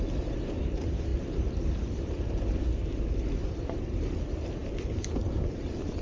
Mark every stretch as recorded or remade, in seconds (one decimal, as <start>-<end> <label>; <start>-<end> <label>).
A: 0.0-6.0 remade